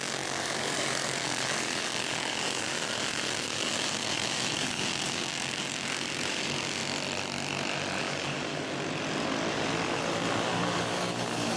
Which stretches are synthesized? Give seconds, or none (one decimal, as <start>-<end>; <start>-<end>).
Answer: 0.0-6.8; 8.0-8.5; 10.4-11.6